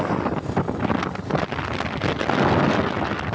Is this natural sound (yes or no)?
yes